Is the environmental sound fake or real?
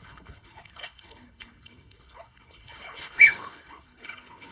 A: fake